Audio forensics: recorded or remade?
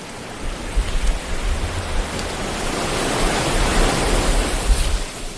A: recorded